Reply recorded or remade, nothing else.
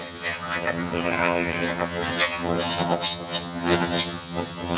remade